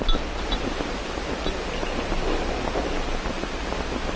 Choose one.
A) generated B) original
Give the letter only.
B